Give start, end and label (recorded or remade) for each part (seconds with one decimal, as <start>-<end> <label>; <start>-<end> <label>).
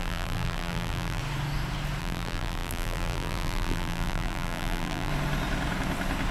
0.0-1.2 remade; 1.2-2.0 recorded; 2.0-5.1 remade; 5.1-6.3 recorded